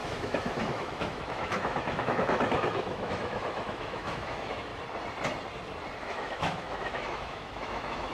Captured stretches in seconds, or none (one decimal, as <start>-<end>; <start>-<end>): 4.7-6.0